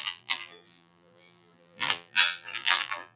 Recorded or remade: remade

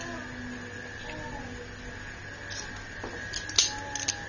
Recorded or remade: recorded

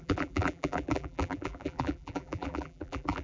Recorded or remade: remade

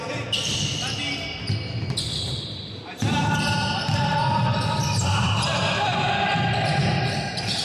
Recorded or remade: recorded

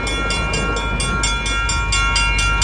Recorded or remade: recorded